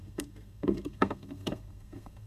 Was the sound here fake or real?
fake